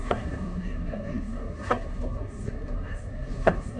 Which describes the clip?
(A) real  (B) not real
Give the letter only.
B